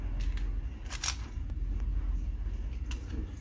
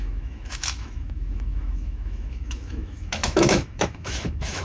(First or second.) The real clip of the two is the first